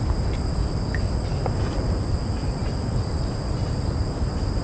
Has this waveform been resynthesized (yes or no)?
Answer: yes